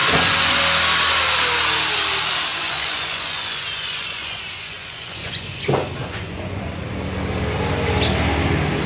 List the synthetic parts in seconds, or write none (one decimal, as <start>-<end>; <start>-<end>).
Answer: 0.0-0.6; 2.5-6.8